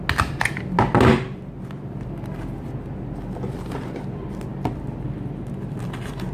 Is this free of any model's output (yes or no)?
yes